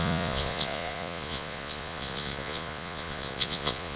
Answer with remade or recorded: remade